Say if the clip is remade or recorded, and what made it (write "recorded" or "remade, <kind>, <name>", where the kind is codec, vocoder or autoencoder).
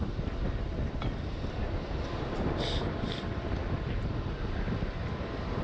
remade, vocoder, BigVGAN v2